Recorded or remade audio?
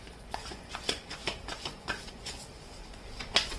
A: remade